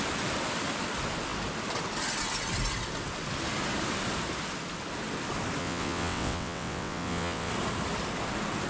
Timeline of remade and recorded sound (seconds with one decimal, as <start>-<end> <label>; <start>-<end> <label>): 0.0-5.6 recorded; 5.6-7.5 remade; 7.5-8.7 recorded

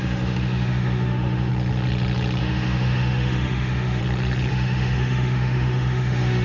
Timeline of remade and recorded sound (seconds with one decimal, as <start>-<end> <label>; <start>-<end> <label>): 0.0-1.5 remade; 1.5-2.4 recorded; 2.4-4.0 remade; 4.0-4.5 recorded; 4.5-6.4 remade

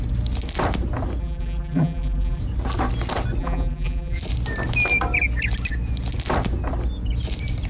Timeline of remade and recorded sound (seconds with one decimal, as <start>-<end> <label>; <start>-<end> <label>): 0.0-1.2 recorded; 1.2-2.4 remade; 2.4-3.4 recorded; 3.4-4.2 remade; 4.2-7.7 recorded

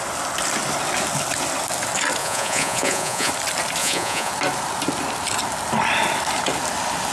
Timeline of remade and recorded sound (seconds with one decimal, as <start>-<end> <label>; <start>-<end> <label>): 0.0-2.2 recorded; 2.2-3.3 remade; 3.3-3.8 recorded; 3.8-4.3 remade; 4.3-7.1 recorded

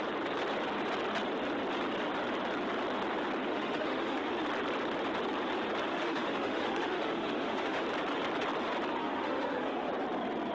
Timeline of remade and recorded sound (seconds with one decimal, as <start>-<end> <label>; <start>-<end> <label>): 0.0-3.5 recorded; 3.5-4.3 remade; 4.3-5.9 recorded; 5.9-7.8 remade; 7.8-9.0 recorded; 9.0-9.9 remade; 9.9-10.5 recorded

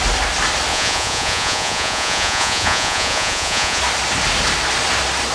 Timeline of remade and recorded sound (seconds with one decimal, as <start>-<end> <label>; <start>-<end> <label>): 0.0-0.7 recorded; 0.7-3.8 remade; 3.8-5.3 recorded

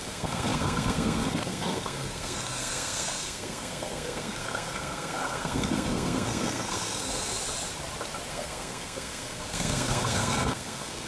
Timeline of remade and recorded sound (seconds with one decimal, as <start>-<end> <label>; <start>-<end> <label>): 0.0-7.3 remade; 7.3-8.3 recorded; 8.3-11.1 remade